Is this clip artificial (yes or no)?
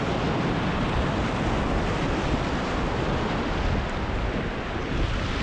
no